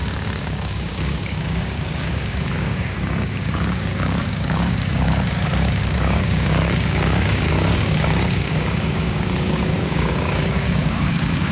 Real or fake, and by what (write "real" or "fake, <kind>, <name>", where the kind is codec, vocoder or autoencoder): fake, codec, DAC